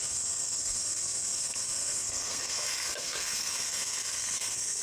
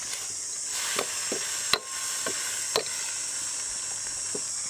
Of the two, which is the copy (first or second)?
first